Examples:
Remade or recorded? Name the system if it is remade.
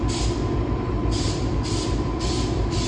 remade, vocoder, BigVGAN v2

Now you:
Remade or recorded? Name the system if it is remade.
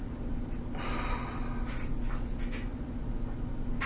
recorded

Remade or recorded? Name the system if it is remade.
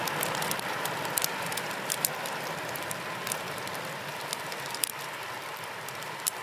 remade, vocoder, BigVGAN v2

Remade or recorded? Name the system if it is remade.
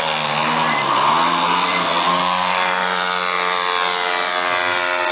recorded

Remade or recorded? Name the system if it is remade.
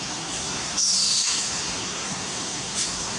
remade, codec, SNAC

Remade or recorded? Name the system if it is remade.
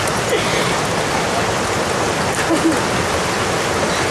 recorded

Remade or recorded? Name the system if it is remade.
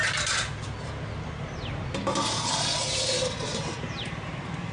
remade, vocoder, BigVGAN v2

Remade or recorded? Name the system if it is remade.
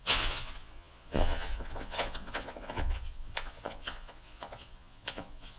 remade, vocoder, Vocos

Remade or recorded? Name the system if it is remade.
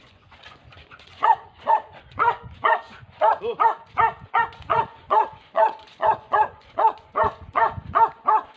remade, vocoder, Vocos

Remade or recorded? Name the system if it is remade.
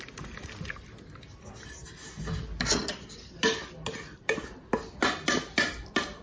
recorded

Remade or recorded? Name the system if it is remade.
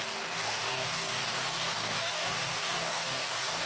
remade, codec, DAC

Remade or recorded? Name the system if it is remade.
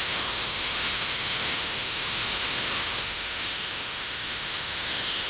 remade, autoencoder, DAC-VAE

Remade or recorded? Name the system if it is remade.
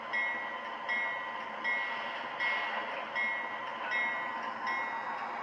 recorded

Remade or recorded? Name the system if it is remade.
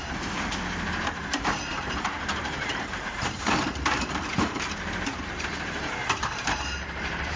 remade, vocoder, BigVGAN v2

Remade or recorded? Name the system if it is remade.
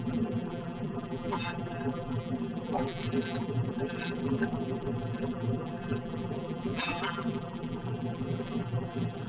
remade, vocoder, BigVGAN v2